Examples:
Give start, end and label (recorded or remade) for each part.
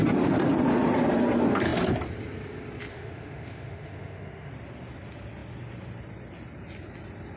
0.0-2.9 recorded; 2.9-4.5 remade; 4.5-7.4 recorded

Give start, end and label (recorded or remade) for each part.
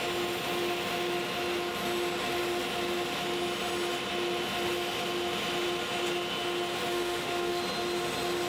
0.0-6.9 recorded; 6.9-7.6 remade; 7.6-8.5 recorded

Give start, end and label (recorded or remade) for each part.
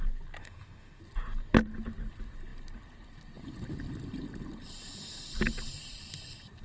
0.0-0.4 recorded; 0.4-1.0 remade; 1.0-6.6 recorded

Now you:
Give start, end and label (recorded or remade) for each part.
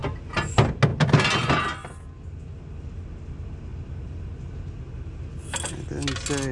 0.0-6.5 recorded